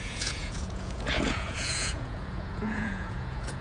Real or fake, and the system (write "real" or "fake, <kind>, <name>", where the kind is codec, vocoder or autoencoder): fake, vocoder, Vocos